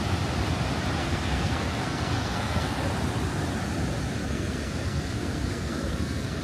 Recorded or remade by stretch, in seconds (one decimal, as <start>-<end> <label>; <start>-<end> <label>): 0.0-1.0 recorded; 1.0-2.7 remade; 2.7-4.2 recorded; 4.2-6.4 remade